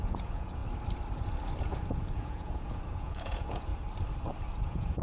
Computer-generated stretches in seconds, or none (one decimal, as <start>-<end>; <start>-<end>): 0.0-0.6; 1.6-3.7; 4.6-5.0